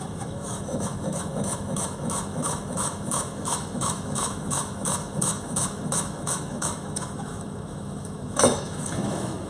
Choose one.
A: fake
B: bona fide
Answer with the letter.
A